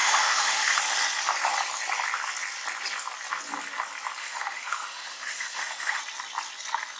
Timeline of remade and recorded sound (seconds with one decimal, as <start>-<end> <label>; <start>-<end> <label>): 0.0-0.8 remade; 0.8-4.2 recorded; 4.2-6.0 remade; 6.0-7.0 recorded